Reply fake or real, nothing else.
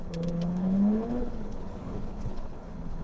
fake